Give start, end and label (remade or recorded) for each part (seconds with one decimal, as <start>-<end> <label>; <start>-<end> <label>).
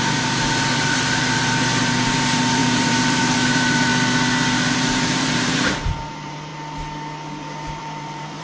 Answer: 0.0-3.9 remade; 3.9-4.7 recorded; 4.7-6.5 remade; 6.5-7.7 recorded; 7.7-8.4 remade